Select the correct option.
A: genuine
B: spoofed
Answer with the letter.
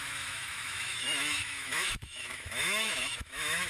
B